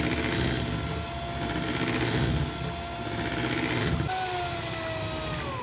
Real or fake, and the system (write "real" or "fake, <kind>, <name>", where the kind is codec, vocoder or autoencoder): real